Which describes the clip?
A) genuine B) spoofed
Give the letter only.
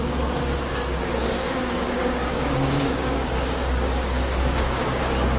B